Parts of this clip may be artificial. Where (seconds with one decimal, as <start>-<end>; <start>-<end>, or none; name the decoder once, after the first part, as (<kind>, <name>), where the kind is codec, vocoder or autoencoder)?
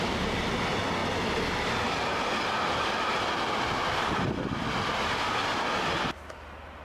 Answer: none